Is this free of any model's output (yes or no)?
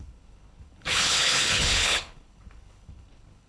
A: no